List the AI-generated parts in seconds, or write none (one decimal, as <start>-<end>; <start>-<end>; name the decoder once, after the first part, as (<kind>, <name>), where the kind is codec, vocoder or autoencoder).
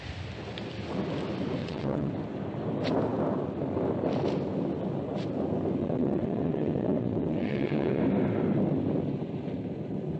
1.6-2.1 (vocoder, WaveNeXt); 5.8-8.0